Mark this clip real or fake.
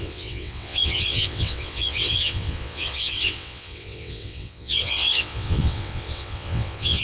fake